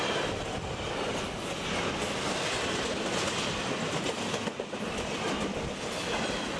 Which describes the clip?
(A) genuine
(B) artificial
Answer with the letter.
A